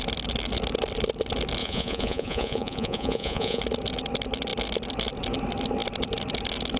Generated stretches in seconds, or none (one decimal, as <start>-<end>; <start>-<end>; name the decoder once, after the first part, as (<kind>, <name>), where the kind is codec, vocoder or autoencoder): 1.6-3.6 (vocoder, Vocos)